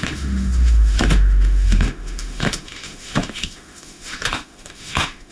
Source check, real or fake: fake